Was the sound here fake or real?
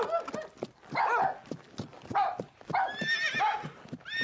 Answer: real